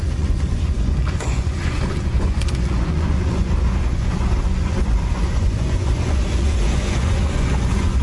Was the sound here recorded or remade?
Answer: remade